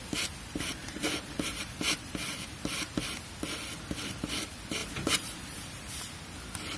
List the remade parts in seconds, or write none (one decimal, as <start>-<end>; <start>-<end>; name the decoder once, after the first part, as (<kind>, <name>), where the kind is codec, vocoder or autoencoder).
0.8-2.1 (vocoder, BigVGAN v2); 4.8-6.0